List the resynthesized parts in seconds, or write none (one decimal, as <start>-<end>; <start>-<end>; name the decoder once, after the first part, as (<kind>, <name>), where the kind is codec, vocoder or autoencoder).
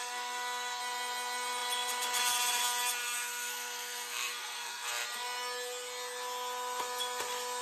0.0-0.8 (codec, SNAC); 3.0-4.9